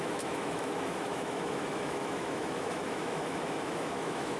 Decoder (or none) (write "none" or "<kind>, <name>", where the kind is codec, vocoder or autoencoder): autoencoder, DAC-VAE